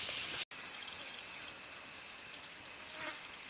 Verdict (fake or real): real